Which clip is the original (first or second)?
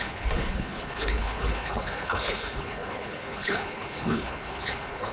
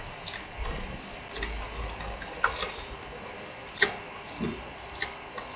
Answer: second